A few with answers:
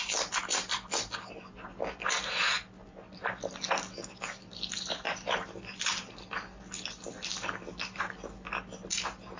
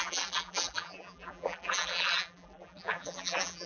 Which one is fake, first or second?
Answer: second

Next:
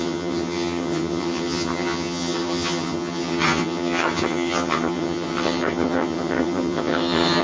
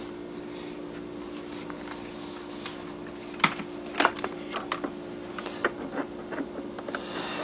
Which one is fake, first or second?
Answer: first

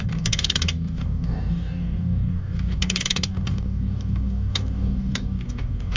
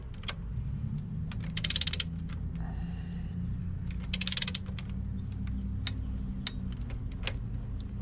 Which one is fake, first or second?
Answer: first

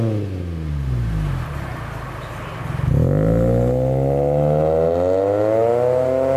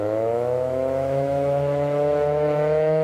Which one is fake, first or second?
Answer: second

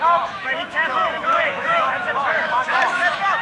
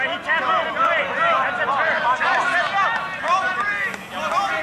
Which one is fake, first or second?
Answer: first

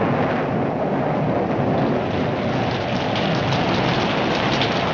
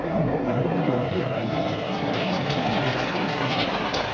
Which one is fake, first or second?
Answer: second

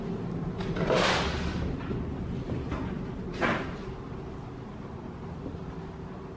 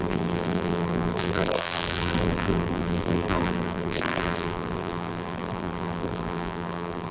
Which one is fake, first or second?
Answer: second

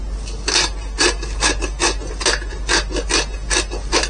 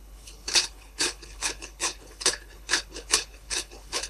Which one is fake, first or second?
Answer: second